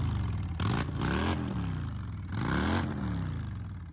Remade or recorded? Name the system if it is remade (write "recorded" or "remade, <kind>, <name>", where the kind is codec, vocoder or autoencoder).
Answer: recorded